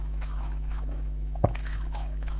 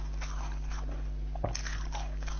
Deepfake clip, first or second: first